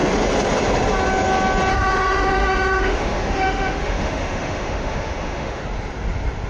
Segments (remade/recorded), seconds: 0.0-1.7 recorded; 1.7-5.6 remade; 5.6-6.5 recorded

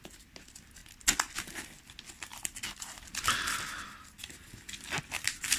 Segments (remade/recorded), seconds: 0.0-5.6 recorded

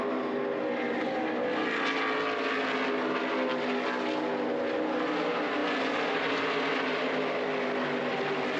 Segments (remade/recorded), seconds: 0.0-8.6 recorded